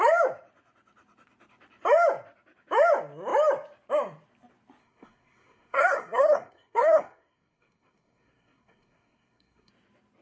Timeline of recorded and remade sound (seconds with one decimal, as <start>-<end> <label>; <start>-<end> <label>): 0.0-4.8 recorded; 4.8-9.7 remade; 9.7-10.2 recorded